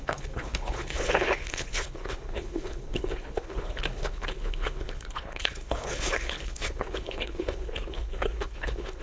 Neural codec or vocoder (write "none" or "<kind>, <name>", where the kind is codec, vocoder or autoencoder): codec, HILCodec